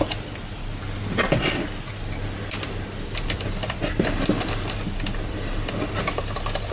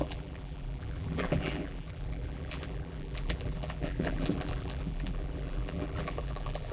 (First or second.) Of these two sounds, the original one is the first